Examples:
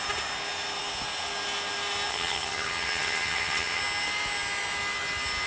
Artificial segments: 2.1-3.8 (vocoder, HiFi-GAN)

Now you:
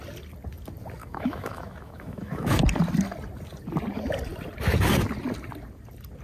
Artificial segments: 1.0-2.6 (autoencoder, DAC-VAE)